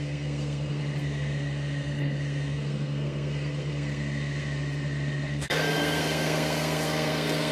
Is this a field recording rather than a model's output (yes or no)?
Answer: no